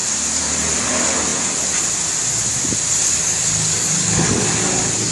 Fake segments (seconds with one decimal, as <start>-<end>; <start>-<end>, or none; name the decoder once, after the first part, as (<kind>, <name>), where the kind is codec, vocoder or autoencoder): 3.1-4.5 (codec, DAC)